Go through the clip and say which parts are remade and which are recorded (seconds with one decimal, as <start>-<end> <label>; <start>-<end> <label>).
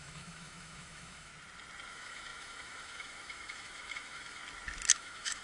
0.0-1.3 remade; 1.3-1.9 recorded; 1.9-4.4 remade; 4.4-4.9 recorded; 4.9-5.4 remade